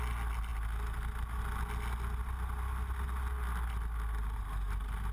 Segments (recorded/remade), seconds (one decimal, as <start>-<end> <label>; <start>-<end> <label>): 0.0-5.1 recorded